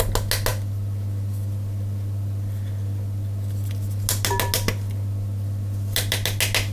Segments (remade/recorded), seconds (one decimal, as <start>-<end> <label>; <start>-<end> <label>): 0.0-6.7 recorded